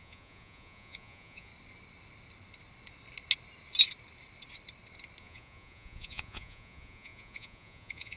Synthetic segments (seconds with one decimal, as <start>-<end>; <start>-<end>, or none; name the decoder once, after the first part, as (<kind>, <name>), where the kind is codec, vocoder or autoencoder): 0.0-1.5 (vocoder, Vocos); 5.2-8.2

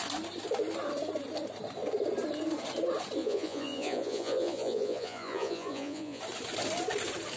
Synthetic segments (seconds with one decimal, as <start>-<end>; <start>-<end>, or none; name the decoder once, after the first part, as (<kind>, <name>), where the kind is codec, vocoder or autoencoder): 3.2-6.2 (vocoder, Vocos)

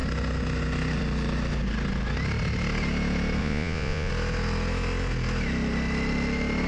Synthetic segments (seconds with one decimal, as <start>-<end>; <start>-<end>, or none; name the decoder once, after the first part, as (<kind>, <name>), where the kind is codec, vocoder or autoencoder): 3.4-4.1 (vocoder, Vocos)

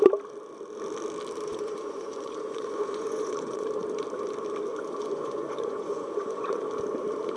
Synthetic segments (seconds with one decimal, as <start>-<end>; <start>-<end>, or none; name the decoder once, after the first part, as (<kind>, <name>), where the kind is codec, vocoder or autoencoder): 1.5-3.7 (vocoder, Vocos); 4.7-6.6

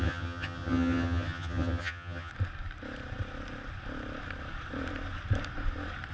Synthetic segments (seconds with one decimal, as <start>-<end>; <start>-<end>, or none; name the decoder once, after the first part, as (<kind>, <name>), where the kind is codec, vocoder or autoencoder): 0.0-2.3 (vocoder, HiFi-GAN)